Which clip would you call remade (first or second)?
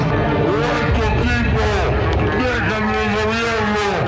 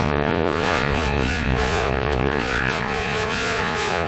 second